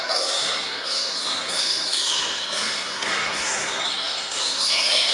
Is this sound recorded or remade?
remade